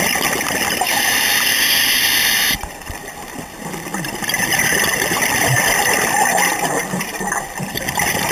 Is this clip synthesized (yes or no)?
yes